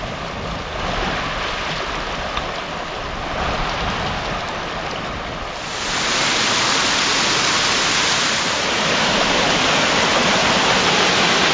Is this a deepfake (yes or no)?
no